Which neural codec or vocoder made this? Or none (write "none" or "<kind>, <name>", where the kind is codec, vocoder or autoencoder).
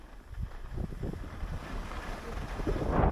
none